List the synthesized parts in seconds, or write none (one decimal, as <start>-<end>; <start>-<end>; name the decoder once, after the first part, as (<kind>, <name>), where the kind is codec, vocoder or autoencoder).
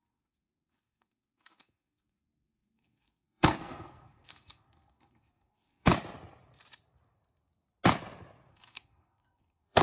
0.0-5.9 (codec, SNAC); 8.5-9.8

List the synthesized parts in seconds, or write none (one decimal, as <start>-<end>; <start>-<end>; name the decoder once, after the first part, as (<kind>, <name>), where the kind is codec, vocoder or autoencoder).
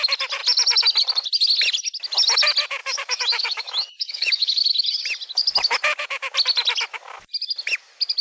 2.8-4.9 (autoencoder, DAC-VAE)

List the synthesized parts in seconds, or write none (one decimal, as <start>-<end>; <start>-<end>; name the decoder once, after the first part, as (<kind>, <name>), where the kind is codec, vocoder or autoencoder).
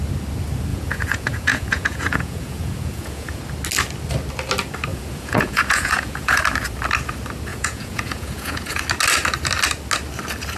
0.7-3.4 (vocoder, Vocos); 4.9-6.4; 7.5-8.8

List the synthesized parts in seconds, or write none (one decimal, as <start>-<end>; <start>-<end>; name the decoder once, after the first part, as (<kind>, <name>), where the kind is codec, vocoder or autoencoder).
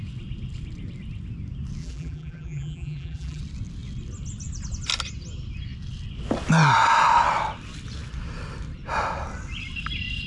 1.8-3.4 (vocoder, BigVGAN v2)